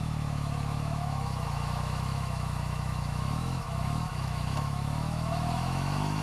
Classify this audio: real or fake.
fake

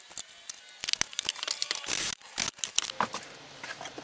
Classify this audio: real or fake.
real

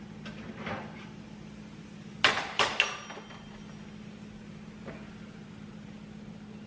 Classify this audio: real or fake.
real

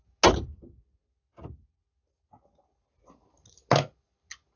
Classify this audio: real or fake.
real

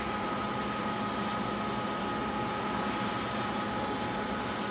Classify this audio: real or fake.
real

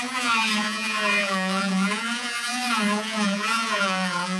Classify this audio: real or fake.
fake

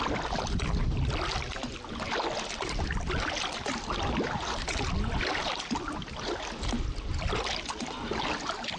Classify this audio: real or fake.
real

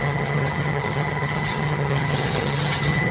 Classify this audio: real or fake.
fake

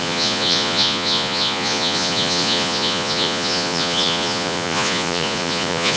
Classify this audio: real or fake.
fake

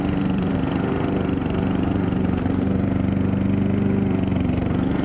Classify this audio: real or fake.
fake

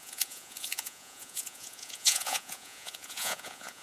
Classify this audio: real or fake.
fake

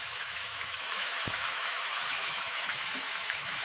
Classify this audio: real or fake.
fake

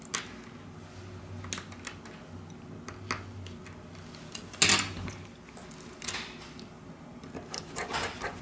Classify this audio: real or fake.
real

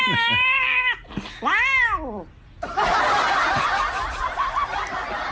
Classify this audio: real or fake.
real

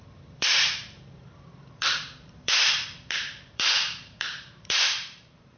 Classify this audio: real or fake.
fake